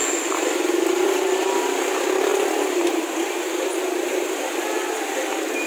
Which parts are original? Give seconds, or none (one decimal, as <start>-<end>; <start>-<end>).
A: 1.0-2.3; 3.8-5.7